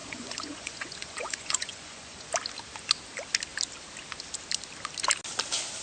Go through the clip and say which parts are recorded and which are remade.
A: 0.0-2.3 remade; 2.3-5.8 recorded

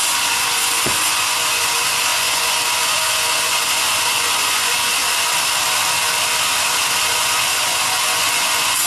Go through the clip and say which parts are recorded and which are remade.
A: 0.0-5.0 remade; 5.0-7.1 recorded; 7.1-8.9 remade

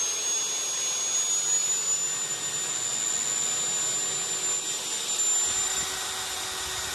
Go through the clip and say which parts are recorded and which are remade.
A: 0.0-2.7 recorded; 2.7-3.5 remade; 3.5-6.9 recorded

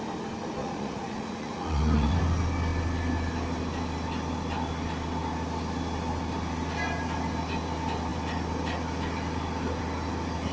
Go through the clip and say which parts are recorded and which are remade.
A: 0.0-0.6 recorded; 0.6-2.2 remade; 2.2-10.5 recorded

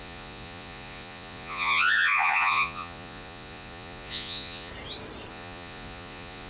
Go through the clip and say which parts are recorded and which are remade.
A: 0.0-4.7 remade; 4.7-5.3 recorded; 5.3-6.5 remade